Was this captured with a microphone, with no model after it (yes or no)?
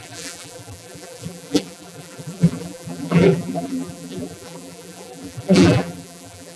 no